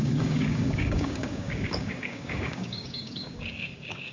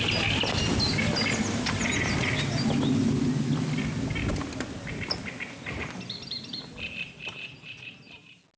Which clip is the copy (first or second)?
first